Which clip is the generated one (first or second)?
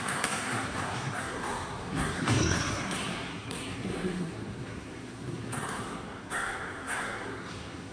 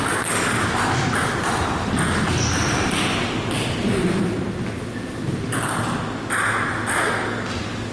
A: first